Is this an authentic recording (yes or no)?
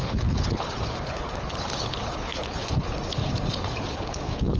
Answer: no